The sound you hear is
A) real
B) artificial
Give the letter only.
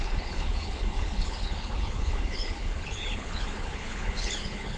B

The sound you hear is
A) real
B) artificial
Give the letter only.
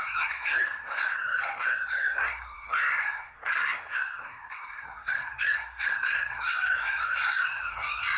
B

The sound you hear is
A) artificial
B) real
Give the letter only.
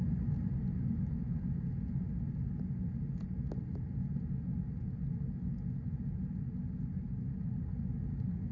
B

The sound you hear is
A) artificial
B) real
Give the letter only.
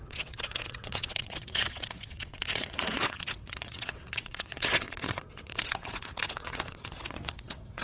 A